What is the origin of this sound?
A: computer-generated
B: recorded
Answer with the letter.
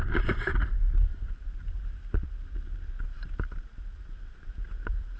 A